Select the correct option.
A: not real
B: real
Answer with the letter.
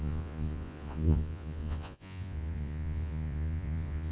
A